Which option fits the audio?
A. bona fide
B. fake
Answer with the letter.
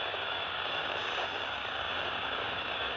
B